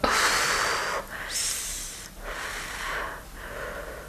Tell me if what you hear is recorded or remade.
recorded